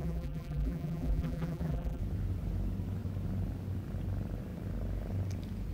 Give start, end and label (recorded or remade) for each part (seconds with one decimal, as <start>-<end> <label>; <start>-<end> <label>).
0.0-2.0 remade; 2.0-5.7 recorded